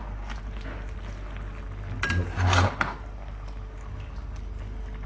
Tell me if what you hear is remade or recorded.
recorded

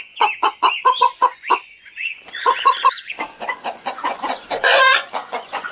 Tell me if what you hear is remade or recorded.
remade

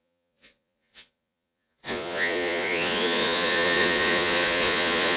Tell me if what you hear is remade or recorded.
remade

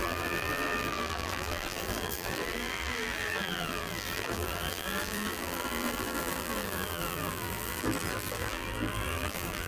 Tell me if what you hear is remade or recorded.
remade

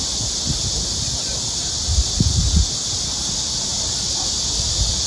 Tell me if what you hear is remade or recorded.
recorded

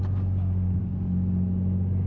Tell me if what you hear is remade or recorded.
recorded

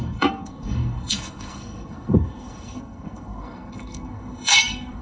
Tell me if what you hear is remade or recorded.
remade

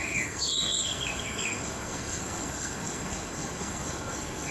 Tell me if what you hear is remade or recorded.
remade